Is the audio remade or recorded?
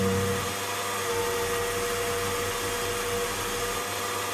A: recorded